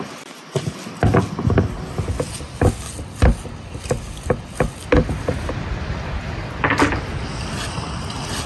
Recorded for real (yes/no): yes